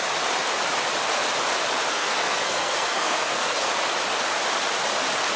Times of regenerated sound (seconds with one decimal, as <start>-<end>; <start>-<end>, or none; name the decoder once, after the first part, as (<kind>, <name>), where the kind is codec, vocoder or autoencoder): 1.9-3.7 (codec, SNAC)